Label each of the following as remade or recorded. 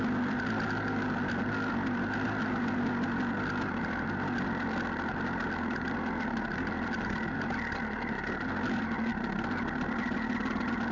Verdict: recorded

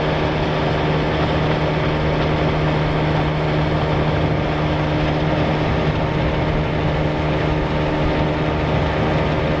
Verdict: recorded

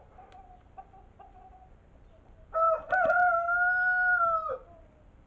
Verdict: recorded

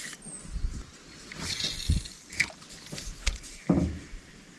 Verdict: recorded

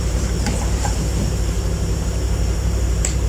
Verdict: remade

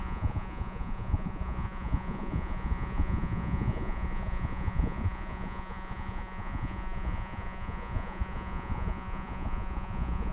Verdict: remade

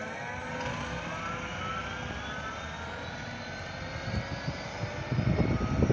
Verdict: recorded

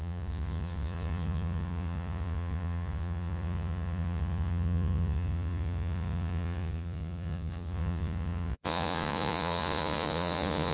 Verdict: remade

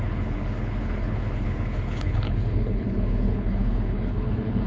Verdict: remade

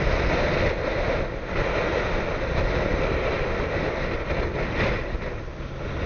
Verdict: recorded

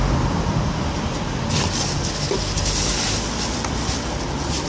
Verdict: recorded